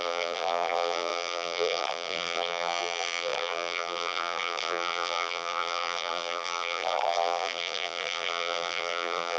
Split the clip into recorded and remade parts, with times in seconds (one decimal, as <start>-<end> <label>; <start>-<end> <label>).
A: 0.0-9.4 remade